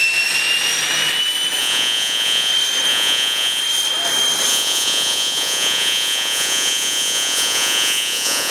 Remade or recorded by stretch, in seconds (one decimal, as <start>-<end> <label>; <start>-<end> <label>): 0.0-1.6 recorded; 1.6-2.5 remade; 2.5-2.9 recorded; 2.9-3.6 remade; 3.6-4.5 recorded; 4.5-8.5 remade